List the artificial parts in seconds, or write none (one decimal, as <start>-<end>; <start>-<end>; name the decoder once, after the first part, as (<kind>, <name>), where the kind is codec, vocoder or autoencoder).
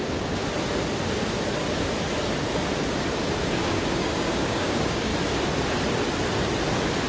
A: 0.0-0.4 (codec, DAC); 3.5-5.1